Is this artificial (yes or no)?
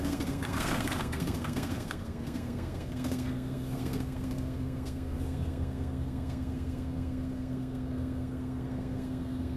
yes